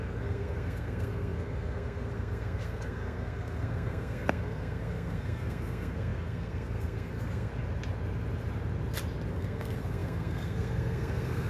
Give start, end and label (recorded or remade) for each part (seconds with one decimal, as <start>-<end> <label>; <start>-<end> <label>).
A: 0.0-7.5 remade; 7.5-9.3 recorded; 9.3-11.5 remade